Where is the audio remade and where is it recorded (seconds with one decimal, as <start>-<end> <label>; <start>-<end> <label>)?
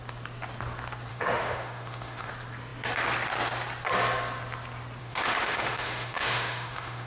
0.0-1.1 recorded; 1.1-2.3 remade; 2.3-5.0 recorded; 5.0-7.1 remade